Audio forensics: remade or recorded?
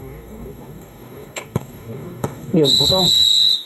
remade